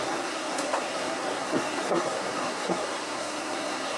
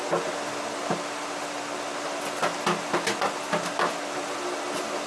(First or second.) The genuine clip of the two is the second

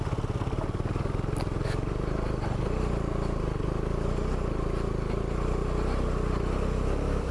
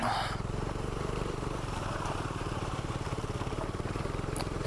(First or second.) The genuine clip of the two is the first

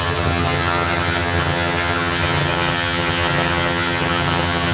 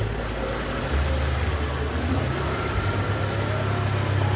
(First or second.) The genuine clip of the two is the second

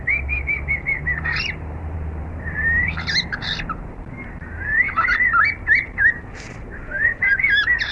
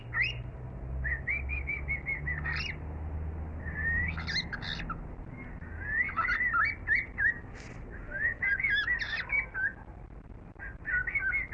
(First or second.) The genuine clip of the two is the second